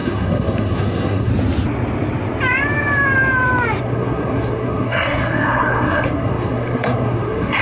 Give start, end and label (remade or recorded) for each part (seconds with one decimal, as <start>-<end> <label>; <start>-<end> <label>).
0.0-1.3 remade; 1.3-3.8 recorded; 3.8-7.6 remade